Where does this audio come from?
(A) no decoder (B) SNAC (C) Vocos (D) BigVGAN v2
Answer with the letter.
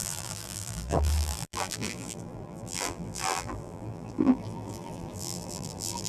D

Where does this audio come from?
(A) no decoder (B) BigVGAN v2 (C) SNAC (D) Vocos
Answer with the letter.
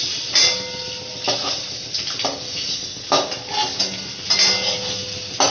A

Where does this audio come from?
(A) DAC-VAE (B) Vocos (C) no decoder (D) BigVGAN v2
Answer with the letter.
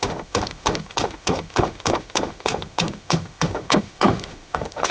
A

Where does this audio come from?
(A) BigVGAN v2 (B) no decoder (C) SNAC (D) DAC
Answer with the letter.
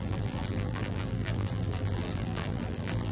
A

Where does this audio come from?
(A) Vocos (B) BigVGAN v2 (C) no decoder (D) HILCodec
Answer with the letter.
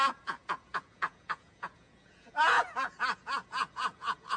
A